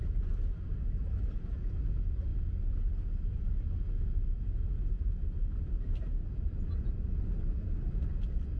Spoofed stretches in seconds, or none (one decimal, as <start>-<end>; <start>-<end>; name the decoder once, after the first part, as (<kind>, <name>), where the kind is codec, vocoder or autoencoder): none